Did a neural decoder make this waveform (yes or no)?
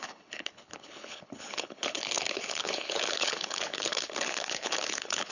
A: yes